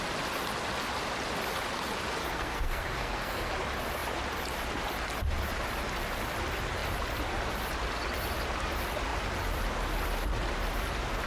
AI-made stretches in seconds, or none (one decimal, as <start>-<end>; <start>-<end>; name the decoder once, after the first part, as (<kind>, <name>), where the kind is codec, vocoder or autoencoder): 2.2-3.5 (codec, SNAC)